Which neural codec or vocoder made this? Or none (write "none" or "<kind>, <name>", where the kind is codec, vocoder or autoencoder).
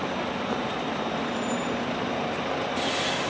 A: none